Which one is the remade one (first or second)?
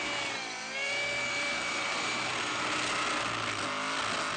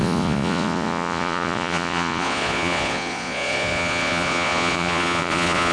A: second